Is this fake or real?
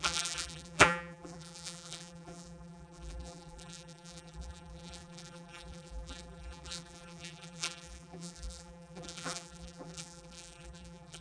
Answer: fake